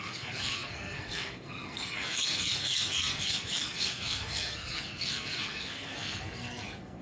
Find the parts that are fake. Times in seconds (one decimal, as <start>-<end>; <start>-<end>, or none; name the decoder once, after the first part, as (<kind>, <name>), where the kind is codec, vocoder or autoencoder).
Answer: 0.0-7.0 (codec, SNAC)